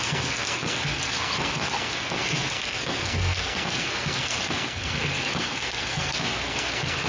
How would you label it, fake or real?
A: fake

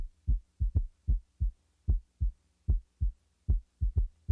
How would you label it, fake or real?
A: real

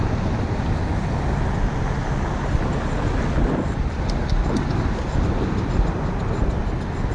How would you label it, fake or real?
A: real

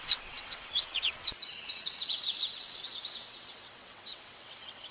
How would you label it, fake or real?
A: fake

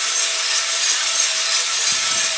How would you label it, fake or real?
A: fake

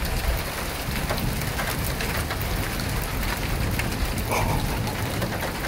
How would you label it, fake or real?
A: real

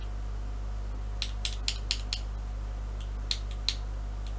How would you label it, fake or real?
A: real